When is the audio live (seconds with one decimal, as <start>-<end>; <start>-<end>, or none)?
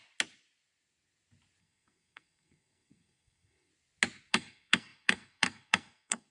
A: 0.0-1.6; 3.7-4.3